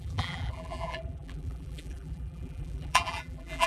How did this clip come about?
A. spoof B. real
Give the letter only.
A